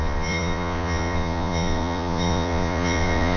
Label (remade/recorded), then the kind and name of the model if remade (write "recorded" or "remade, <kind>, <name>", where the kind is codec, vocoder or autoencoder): remade, vocoder, Vocos